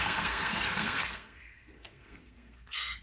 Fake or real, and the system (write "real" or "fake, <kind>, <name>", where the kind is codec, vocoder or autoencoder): fake, codec, SNAC